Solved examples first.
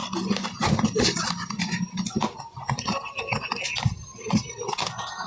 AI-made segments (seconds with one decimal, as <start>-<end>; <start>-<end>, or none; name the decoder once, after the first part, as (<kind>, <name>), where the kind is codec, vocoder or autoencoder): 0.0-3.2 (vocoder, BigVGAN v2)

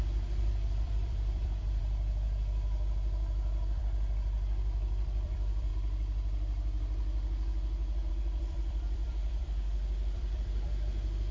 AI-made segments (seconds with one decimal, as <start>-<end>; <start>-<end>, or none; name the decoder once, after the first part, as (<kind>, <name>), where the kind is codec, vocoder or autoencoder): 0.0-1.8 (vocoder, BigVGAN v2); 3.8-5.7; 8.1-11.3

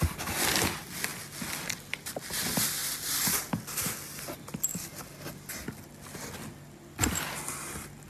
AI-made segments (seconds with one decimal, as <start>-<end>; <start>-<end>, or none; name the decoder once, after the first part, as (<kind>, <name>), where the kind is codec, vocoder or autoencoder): none

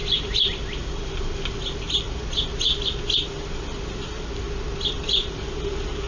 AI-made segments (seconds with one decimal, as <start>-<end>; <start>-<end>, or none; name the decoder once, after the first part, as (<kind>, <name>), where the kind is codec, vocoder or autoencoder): 0.0-6.1 (vocoder, BigVGAN v2)

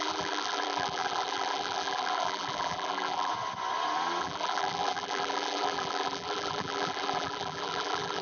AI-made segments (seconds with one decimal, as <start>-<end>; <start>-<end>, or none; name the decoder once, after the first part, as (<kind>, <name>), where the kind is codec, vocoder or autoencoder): 0.0-3.3 (vocoder, BigVGAN v2); 4.2-8.2